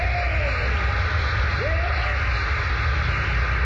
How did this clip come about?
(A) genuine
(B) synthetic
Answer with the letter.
A